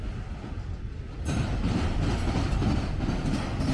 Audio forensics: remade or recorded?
recorded